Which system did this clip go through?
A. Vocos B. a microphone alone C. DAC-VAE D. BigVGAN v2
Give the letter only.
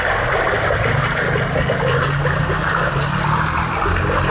B